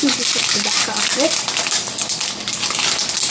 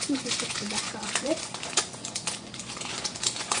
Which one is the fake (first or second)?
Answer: second